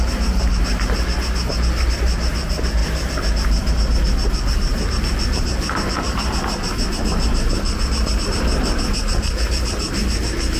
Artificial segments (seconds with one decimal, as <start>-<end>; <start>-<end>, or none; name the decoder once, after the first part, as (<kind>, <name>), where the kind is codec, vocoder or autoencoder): 4.7-6.3 (vocoder, BigVGAN v2)

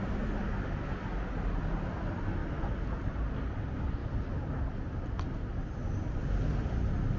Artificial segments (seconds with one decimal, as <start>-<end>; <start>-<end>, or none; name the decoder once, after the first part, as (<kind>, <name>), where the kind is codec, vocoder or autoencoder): none

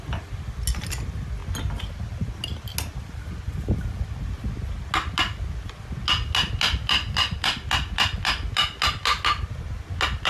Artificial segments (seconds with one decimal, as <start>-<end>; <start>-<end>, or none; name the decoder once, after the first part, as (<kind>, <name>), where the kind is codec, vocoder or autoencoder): none

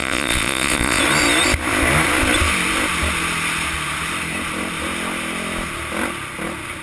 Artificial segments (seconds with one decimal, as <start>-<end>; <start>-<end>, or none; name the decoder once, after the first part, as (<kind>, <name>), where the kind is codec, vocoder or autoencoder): 0.0-1.0 (vocoder, Vocos)